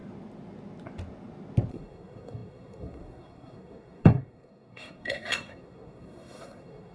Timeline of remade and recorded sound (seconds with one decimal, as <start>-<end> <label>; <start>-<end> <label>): 0.0-1.7 recorded; 1.7-6.9 remade